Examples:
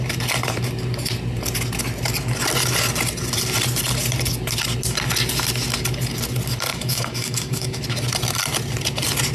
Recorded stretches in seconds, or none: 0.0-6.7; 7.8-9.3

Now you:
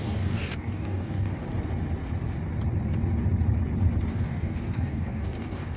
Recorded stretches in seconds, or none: 1.4-4.1

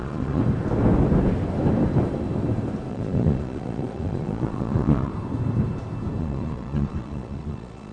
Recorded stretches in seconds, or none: 0.4-2.9; 5.1-6.2

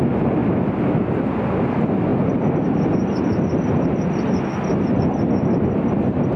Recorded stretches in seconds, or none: 0.0-6.4

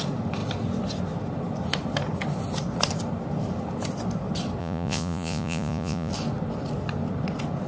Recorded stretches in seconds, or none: 0.0-4.6; 6.1-7.7